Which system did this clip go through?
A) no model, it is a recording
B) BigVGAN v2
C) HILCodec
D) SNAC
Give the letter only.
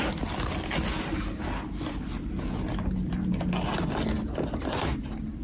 A